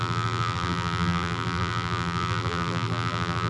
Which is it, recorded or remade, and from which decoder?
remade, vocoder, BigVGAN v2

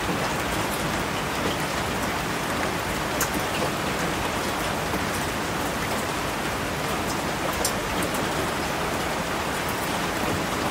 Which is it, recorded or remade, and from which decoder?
recorded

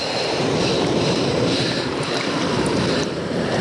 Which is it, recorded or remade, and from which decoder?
remade, vocoder, BigVGAN v2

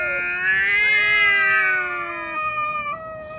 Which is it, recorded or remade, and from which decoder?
recorded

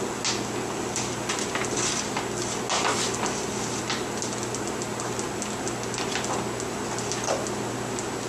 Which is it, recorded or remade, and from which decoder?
recorded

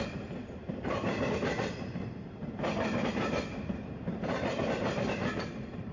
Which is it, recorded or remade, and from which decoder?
remade, vocoder, BigVGAN v2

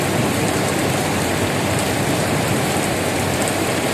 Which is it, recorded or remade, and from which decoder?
remade, vocoder, BigVGAN v2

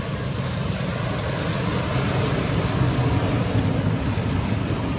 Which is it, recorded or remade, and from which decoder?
recorded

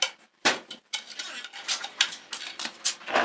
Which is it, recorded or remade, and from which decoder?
remade, vocoder, BigVGAN v2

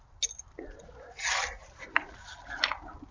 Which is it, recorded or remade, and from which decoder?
recorded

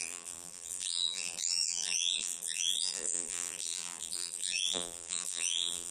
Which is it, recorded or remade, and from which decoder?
remade, vocoder, BigVGAN v2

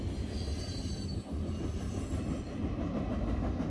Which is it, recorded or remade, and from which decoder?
recorded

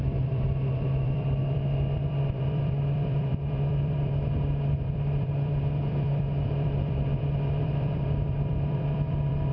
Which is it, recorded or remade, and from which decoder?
remade, vocoder, BigVGAN v2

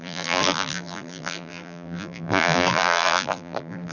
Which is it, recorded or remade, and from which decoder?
remade, vocoder, BigVGAN v2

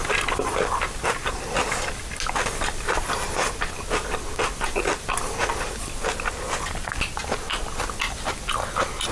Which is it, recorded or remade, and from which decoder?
recorded